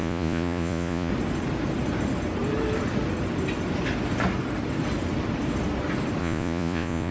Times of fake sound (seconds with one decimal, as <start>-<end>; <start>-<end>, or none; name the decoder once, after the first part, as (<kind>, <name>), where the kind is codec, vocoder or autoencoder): 0.0-1.1 (vocoder, Vocos); 6.2-7.1